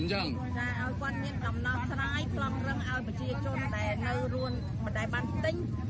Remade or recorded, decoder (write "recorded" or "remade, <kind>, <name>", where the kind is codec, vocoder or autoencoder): recorded